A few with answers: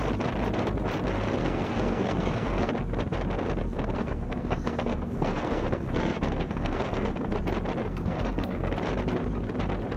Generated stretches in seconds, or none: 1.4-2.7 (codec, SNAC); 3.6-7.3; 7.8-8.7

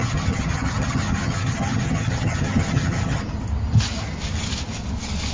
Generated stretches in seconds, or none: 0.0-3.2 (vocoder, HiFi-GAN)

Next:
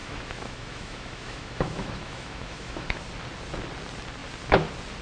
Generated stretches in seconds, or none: 0.0-3.0 (autoencoder, DAC-VAE)

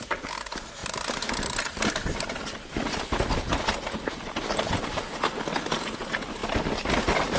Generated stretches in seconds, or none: none

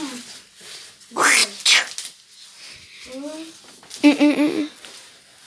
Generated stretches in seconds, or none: none